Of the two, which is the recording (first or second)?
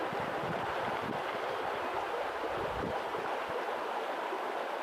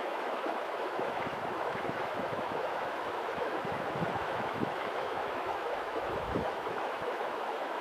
first